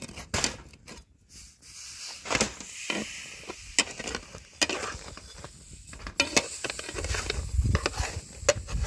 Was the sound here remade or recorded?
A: recorded